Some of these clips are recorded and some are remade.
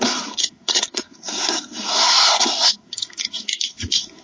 remade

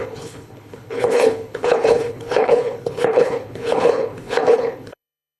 remade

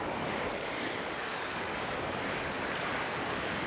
remade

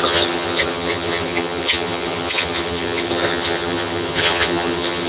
remade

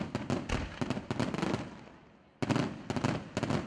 recorded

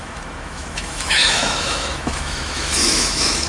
remade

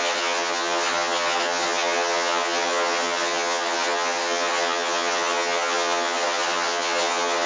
remade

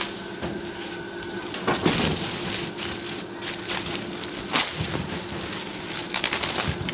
recorded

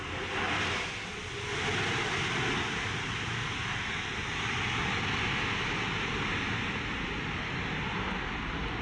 recorded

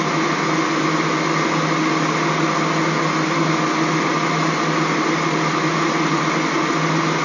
recorded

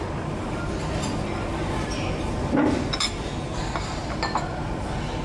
recorded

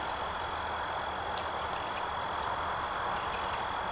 recorded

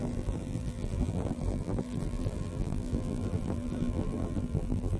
remade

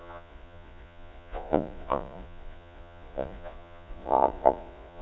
remade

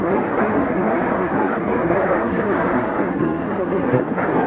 remade